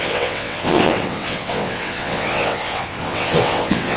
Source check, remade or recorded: remade